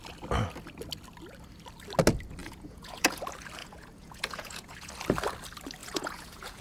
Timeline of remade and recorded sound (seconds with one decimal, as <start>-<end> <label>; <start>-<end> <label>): 0.0-2.4 recorded; 2.4-3.2 remade; 3.2-3.6 recorded; 3.6-4.9 remade; 4.9-5.8 recorded; 5.8-6.6 remade